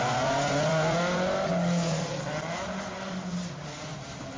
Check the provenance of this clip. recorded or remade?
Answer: recorded